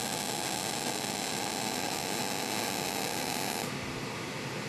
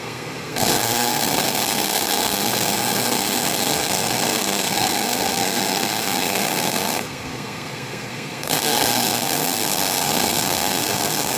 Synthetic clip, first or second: second